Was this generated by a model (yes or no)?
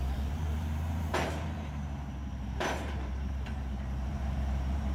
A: yes